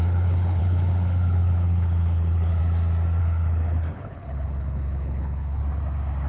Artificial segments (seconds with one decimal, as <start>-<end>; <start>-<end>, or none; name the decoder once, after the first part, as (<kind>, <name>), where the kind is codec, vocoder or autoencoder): 0.0-2.6 (codec, HILCodec); 3.2-5.6